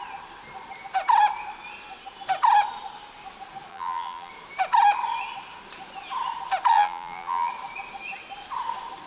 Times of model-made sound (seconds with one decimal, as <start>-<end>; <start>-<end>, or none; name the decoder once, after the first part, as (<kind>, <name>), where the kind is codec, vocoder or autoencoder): 3.7-4.3 (vocoder, BigVGAN v2); 6.7-7.5